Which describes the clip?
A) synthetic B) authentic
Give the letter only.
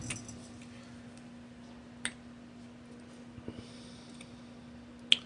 B